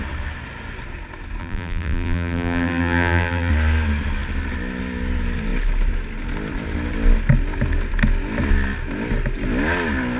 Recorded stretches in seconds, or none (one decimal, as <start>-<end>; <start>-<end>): 0.0-1.4; 3.5-10.2